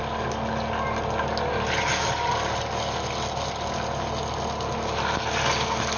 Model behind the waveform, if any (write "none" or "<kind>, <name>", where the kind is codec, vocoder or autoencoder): none